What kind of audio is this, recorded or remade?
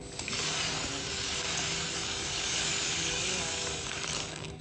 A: remade